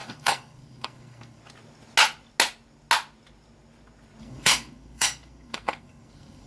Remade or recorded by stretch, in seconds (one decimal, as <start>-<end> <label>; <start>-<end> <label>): 0.0-1.4 remade; 1.4-4.2 recorded; 4.2-6.5 remade